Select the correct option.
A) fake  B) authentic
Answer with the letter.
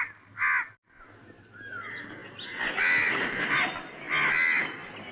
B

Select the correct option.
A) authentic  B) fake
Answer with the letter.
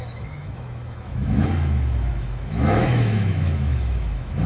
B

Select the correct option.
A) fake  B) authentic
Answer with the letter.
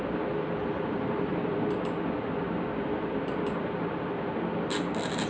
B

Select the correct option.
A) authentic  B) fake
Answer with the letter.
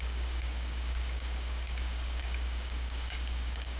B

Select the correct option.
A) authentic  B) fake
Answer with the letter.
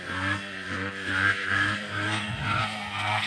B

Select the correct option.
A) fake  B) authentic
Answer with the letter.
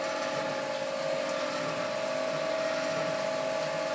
B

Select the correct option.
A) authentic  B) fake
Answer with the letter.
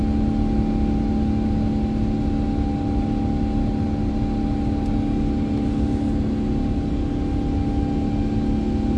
A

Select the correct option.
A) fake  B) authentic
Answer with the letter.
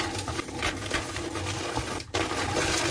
B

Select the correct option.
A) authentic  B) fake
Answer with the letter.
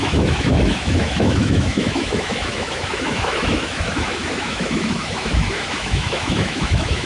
B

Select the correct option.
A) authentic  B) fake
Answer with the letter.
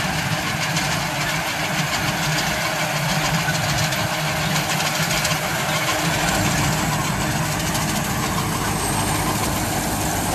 A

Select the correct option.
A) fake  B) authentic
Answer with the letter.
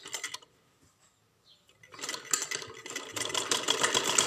B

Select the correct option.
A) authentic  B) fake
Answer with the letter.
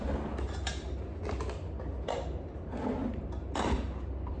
A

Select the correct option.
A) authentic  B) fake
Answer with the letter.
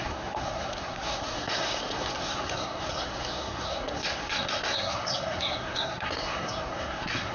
B